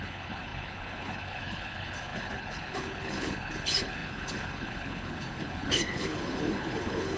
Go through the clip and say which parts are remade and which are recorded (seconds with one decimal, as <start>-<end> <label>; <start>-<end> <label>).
0.0-7.2 remade